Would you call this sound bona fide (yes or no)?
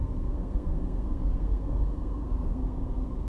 no